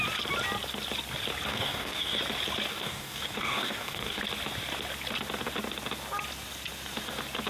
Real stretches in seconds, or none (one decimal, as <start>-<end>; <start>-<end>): 0.0-1.5; 2.2-2.7; 4.2-7.5